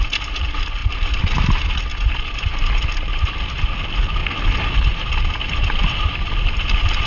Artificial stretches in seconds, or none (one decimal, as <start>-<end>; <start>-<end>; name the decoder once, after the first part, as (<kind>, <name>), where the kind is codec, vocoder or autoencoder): none